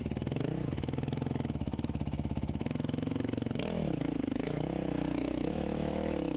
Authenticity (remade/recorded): remade